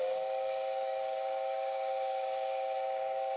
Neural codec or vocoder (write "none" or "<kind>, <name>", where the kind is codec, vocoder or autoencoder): codec, DAC